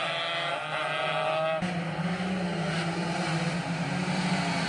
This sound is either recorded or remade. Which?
recorded